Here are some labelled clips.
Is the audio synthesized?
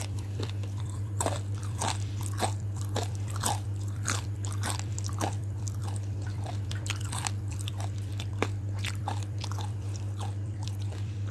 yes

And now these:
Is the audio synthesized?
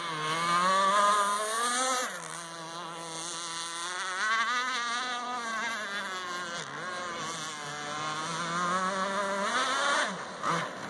no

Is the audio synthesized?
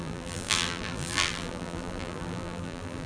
yes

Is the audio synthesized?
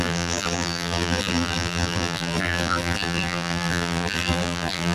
yes